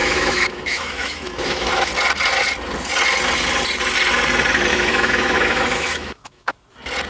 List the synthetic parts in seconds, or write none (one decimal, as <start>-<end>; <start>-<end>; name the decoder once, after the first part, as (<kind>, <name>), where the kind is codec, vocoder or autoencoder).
0.0-1.9 (autoencoder, DAC-VAE); 4.7-6.5